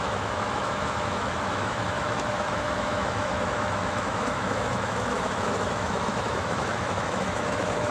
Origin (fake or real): fake